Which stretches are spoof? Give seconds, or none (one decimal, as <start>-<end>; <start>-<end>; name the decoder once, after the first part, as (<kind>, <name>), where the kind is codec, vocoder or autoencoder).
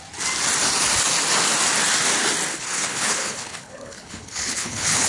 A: 2.5-5.1 (codec, HILCodec)